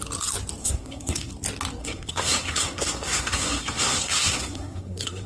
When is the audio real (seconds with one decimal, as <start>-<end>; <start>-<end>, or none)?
0.0-0.6; 1.3-1.8